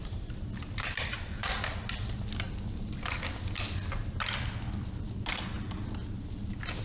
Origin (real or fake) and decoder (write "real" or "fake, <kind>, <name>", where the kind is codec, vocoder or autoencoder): real